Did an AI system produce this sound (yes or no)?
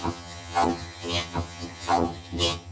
yes